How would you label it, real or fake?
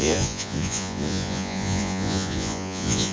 fake